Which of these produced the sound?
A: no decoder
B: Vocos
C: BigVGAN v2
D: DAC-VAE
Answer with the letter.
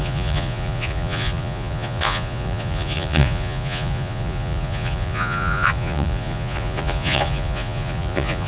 B